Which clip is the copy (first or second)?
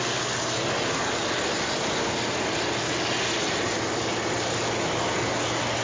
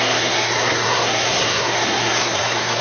second